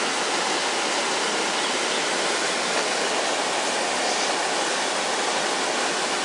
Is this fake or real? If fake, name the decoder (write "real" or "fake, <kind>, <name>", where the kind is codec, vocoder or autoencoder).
real